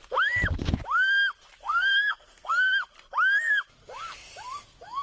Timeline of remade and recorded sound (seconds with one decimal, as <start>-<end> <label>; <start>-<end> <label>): 0.0-1.6 recorded; 1.6-2.5 remade; 2.5-5.0 recorded